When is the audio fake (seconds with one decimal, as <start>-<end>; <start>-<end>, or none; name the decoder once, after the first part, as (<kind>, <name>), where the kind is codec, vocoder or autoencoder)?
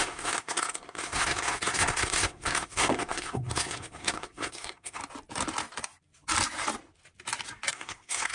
0.0-5.0 (codec, SNAC); 7.7-8.3